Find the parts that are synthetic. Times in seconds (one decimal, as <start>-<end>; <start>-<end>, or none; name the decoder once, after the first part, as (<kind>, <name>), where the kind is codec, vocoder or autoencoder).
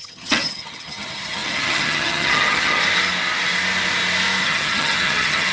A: 0.0-2.8 (vocoder, HiFi-GAN); 4.4-5.5